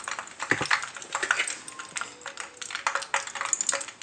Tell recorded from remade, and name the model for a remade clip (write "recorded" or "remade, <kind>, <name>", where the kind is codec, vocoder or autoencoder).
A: recorded